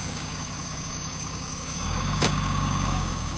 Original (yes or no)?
no